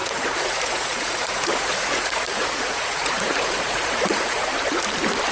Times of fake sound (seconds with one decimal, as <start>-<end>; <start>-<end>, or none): 0.0-4.5